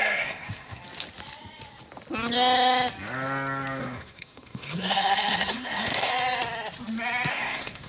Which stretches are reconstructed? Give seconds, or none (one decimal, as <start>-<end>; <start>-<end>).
0.0-0.8; 3.8-6.1; 7.3-7.9